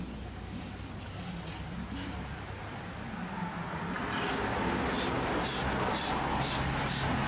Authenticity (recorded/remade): recorded